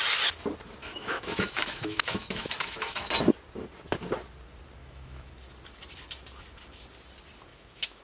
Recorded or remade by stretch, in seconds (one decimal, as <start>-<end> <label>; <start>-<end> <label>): 0.0-0.8 recorded; 0.8-3.1 remade; 3.1-4.8 recorded; 4.8-5.3 remade; 5.3-7.5 recorded; 7.5-8.0 remade